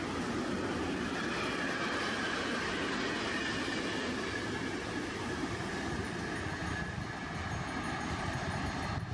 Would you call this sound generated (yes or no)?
no